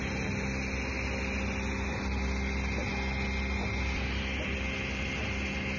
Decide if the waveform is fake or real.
real